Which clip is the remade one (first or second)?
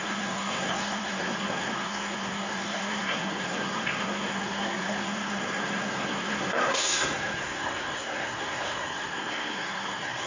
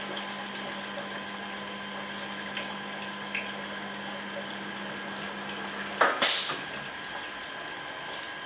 first